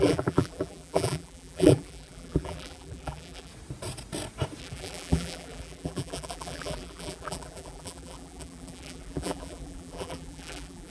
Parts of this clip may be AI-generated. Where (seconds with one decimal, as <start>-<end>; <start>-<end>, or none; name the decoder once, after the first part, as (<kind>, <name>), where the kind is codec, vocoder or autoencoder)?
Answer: 0.0-3.5 (vocoder, BigVGAN v2); 4.6-10.9